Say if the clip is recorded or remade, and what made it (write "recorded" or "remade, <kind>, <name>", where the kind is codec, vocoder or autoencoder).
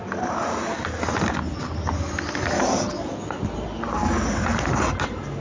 recorded